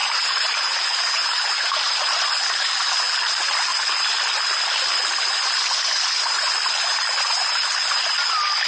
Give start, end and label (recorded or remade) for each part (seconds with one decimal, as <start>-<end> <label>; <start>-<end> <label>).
0.0-2.3 remade; 2.3-8.7 recorded